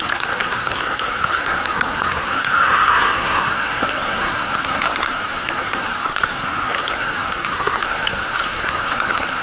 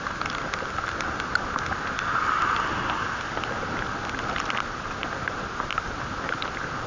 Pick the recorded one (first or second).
second